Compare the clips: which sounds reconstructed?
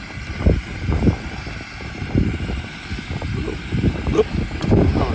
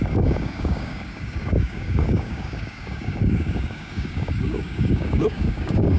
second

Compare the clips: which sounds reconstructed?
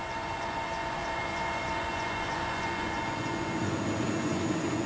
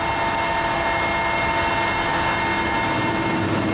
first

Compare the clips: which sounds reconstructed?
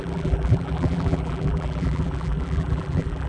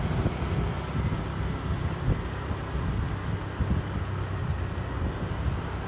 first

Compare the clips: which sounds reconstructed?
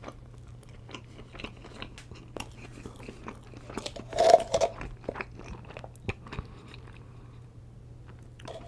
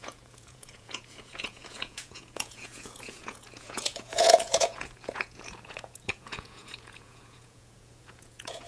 second